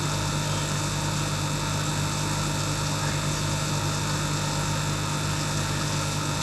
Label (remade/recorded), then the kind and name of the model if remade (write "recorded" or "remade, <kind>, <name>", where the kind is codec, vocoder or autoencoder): recorded